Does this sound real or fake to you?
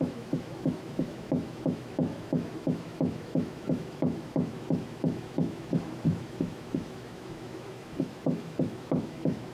fake